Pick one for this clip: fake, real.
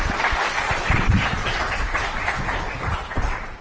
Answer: real